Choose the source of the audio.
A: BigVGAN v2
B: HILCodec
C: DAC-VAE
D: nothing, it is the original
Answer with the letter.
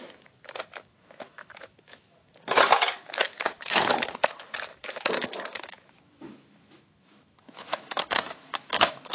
C